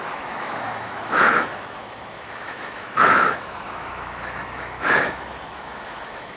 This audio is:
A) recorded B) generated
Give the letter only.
B